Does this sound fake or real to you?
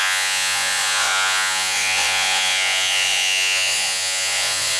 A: fake